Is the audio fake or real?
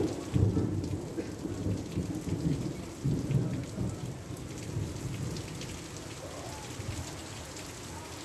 real